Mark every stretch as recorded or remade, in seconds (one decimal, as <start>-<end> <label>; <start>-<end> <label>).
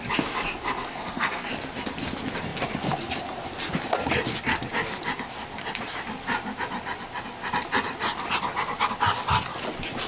0.0-0.9 recorded; 0.9-1.5 remade; 1.5-10.1 recorded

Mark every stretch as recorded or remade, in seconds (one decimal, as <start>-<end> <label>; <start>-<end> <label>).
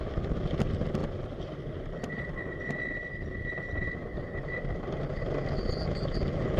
0.0-6.6 recorded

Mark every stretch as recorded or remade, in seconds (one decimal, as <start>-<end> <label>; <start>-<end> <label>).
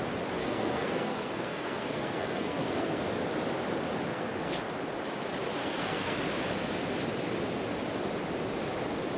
0.0-0.4 recorded; 0.4-3.0 remade; 3.0-4.1 recorded; 4.1-4.6 remade; 4.6-5.6 recorded; 5.6-6.2 remade; 6.2-9.2 recorded